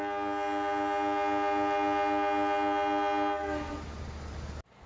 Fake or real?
real